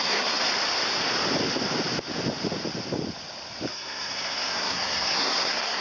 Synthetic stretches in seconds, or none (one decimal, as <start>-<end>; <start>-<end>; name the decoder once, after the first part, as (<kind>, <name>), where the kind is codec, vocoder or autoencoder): 0.0-0.4 (codec, SNAC); 3.7-5.8